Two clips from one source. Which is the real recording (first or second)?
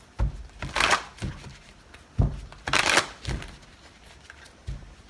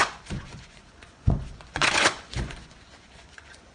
first